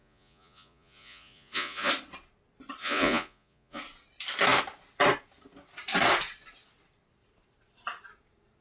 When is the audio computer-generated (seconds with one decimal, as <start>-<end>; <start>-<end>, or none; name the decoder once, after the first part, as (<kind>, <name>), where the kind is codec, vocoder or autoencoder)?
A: 0.0-1.9 (vocoder, Vocos); 2.8-3.8